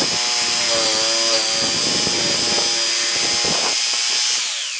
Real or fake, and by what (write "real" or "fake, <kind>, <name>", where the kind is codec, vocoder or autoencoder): real